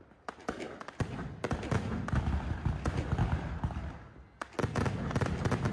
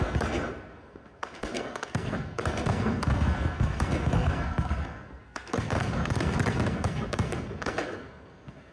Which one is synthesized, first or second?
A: second